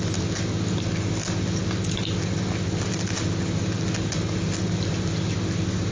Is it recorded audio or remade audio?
recorded